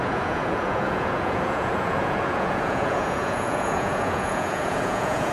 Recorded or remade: remade